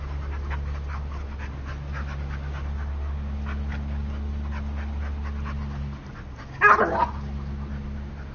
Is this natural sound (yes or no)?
yes